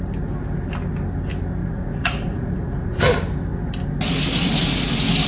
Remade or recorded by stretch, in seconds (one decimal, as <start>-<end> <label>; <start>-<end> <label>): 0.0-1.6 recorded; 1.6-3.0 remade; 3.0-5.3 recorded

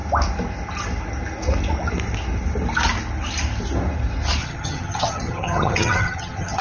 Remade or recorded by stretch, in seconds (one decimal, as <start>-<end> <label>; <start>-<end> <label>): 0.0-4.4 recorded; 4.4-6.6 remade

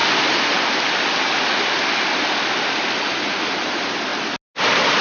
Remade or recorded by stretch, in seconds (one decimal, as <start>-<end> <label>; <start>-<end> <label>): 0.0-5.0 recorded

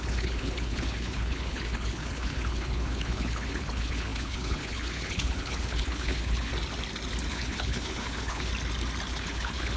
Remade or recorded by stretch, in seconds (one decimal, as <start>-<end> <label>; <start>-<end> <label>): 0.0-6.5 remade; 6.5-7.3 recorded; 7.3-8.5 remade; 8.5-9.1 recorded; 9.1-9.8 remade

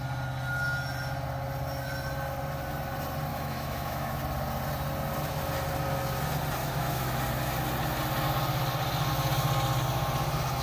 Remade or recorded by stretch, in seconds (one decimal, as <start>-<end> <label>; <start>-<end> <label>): 0.0-3.3 recorded; 3.3-4.2 remade; 4.2-6.6 recorded; 6.6-7.2 remade; 7.2-10.6 recorded